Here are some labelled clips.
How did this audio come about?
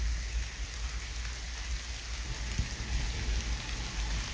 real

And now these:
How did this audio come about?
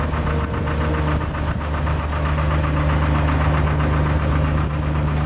real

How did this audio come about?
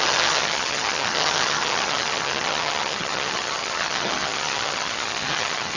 fake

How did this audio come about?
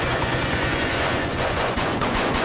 fake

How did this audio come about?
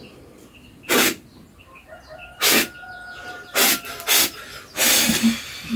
real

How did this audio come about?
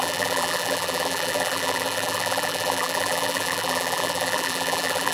fake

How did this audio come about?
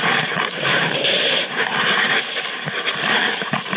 fake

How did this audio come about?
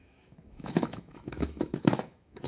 fake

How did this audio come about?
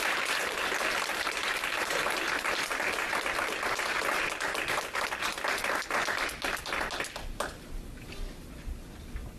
real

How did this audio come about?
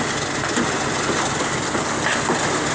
real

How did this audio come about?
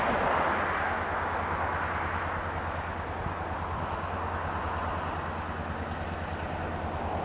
real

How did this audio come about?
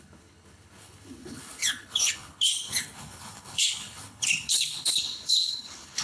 fake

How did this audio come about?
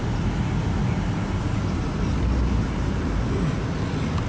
real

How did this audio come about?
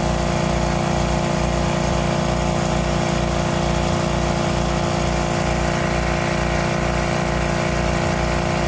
real